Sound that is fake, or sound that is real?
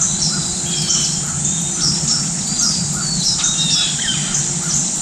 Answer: real